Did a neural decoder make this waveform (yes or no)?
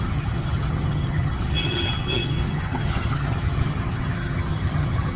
yes